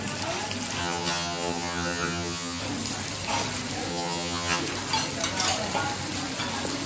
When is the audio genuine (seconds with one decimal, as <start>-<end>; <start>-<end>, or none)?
0.0-0.8; 2.6-3.9; 4.6-6.9